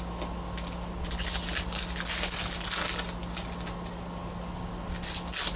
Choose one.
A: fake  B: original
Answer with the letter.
B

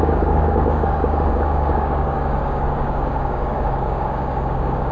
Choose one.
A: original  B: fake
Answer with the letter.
B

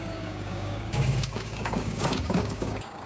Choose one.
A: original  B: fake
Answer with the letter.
B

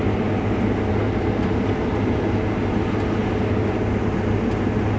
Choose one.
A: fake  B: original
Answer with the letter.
B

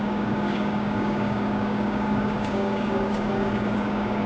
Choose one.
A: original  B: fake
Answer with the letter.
B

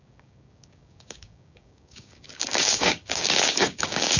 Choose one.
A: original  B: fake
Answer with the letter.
B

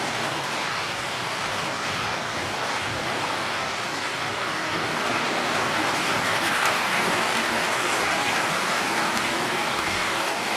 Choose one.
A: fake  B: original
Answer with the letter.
A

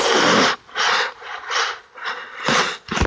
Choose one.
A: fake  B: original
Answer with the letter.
B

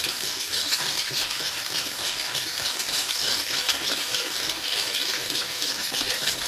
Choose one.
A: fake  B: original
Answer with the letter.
A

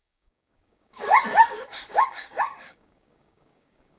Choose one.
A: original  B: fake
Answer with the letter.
B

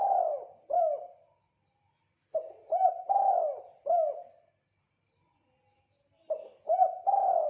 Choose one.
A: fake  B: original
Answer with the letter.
B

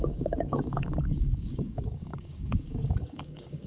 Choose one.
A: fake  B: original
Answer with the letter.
A